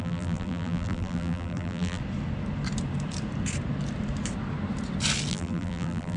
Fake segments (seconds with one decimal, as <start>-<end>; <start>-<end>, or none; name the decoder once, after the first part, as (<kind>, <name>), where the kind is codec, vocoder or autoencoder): 0.0-2.0 (vocoder, BigVGAN v2); 5.3-6.2